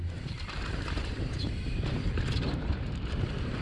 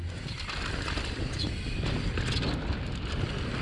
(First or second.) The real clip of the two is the second